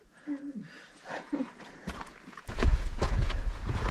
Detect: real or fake fake